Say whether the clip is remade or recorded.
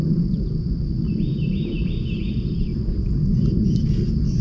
recorded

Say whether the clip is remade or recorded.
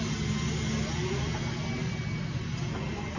recorded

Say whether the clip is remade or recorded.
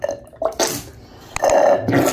recorded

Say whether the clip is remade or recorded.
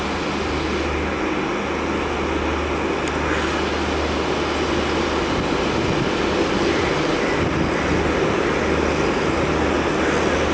recorded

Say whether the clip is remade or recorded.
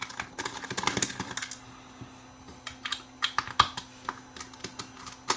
recorded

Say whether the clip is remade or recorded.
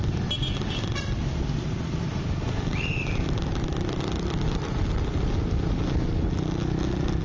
recorded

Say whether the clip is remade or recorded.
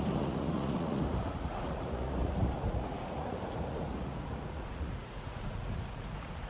remade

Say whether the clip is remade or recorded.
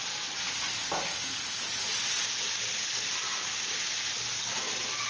recorded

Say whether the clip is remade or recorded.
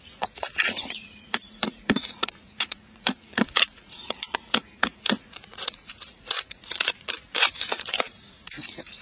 remade